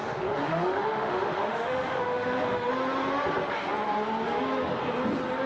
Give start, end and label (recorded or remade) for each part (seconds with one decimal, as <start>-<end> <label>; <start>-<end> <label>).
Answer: 0.0-2.7 remade; 2.7-5.5 recorded